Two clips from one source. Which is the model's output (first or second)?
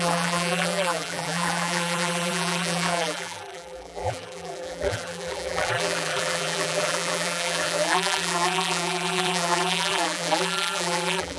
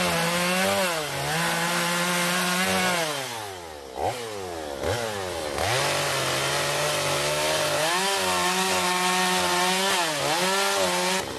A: first